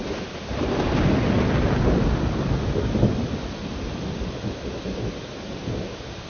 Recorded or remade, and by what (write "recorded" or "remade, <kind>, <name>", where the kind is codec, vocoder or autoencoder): recorded